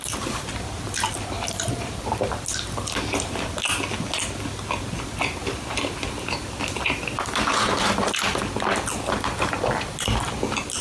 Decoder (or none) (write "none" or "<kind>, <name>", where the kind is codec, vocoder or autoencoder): none